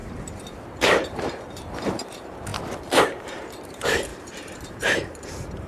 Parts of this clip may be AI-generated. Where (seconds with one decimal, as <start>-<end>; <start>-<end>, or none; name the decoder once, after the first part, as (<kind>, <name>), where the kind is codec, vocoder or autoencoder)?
0.0-2.5 (vocoder, BigVGAN v2); 3.2-5.7